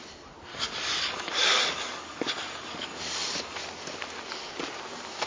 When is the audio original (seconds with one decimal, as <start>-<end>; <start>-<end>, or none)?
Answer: 0.0-0.5; 3.6-5.3